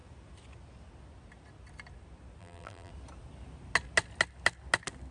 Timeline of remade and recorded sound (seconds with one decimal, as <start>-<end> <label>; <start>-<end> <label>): 0.0-2.4 recorded; 2.4-2.9 remade; 2.9-5.1 recorded